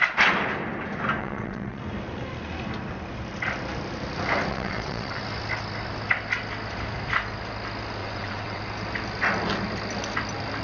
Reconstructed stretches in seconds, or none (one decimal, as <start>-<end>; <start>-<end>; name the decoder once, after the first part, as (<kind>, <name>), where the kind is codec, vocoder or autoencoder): 1.2-1.8 (vocoder, WaveNeXt); 4.5-5.2; 8.0-8.6